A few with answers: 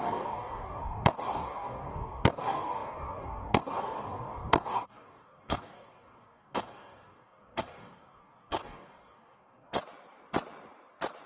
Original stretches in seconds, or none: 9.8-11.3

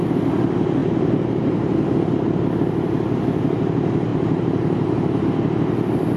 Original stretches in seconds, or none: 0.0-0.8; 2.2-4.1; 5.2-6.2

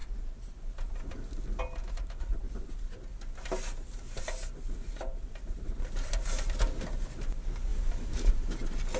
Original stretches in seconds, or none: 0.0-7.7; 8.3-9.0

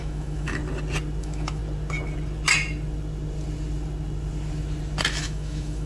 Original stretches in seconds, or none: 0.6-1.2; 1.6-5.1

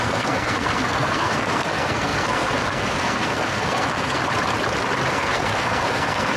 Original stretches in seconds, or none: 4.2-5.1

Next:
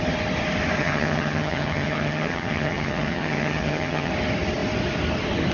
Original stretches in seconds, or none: 0.0-0.8; 4.1-5.5

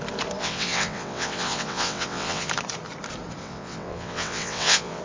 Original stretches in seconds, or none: 0.0-0.4; 2.5-3.4

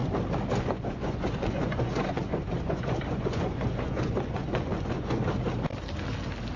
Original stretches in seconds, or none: 0.0-0.6; 5.2-6.6